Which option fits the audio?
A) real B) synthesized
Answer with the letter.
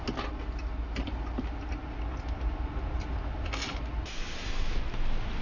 A